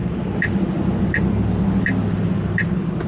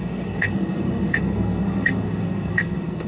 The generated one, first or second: second